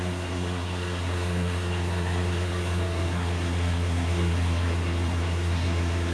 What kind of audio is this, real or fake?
fake